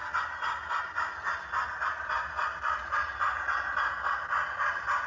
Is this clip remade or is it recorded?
recorded